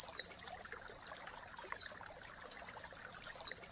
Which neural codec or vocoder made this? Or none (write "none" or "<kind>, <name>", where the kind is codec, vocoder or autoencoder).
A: none